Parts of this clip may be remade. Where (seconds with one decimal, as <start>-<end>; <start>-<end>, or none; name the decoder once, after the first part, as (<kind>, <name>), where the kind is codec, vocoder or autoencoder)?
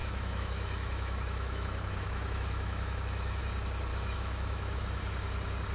0.0-3.4 (autoencoder, DAC-VAE); 3.9-4.8